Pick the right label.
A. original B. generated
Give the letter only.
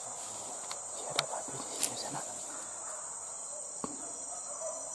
A